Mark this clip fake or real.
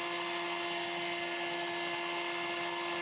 real